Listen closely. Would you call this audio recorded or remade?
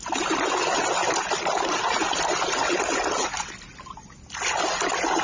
recorded